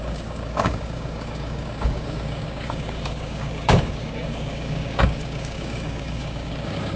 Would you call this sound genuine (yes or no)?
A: no